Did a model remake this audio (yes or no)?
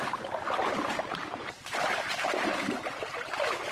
no